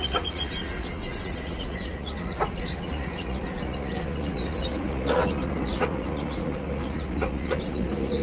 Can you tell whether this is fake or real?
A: fake